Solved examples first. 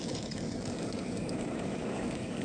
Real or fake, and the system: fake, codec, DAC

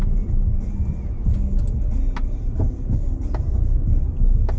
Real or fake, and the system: real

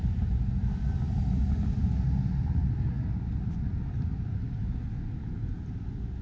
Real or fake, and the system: real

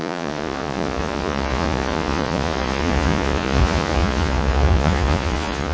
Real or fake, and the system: fake, vocoder, Vocos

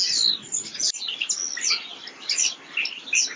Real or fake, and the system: real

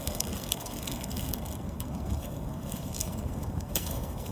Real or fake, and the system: fake, codec, SNAC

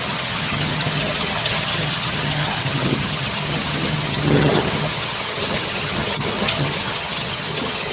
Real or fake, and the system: fake, vocoder, HiFi-GAN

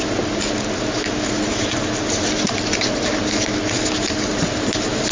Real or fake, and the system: real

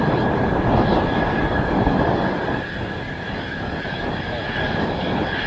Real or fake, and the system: real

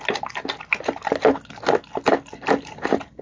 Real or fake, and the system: real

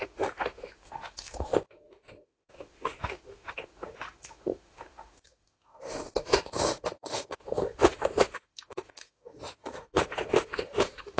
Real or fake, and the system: fake, autoencoder, DAC-VAE